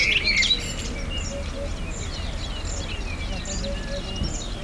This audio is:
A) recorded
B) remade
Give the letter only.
A